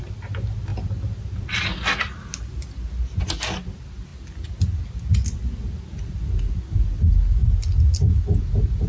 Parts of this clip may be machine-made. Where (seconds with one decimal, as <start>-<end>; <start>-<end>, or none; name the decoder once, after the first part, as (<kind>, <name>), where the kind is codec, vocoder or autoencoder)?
none